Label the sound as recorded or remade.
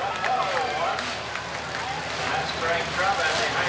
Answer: recorded